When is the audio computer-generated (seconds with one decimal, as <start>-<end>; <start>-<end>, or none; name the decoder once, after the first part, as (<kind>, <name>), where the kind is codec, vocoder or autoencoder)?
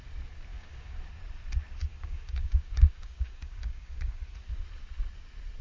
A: 0.5-1.0 (codec, DAC); 1.8-4.2